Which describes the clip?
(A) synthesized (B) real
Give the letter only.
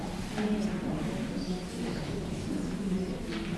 B